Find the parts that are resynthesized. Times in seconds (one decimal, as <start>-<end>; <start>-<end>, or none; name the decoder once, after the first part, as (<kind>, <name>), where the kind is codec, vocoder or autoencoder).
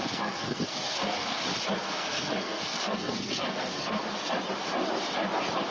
0.0-1.4 (codec, SNAC); 1.8-4.0